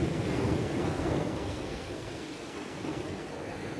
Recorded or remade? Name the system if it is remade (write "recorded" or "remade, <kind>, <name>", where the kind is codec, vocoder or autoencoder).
remade, codec, SNAC